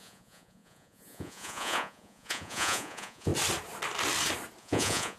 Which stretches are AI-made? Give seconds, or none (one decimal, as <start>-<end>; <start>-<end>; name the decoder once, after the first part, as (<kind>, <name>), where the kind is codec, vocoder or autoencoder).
0.0-3.3 (vocoder, Vocos); 4.6-5.2